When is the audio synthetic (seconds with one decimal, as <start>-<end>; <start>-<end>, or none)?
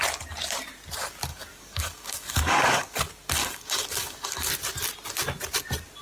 1.3-3.0; 3.4-4.5